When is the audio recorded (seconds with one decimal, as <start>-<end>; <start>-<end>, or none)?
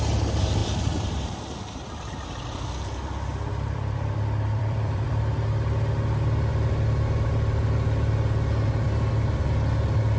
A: 0.0-0.6; 1.4-3.3; 5.2-10.2